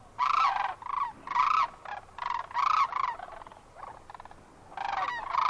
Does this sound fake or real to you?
real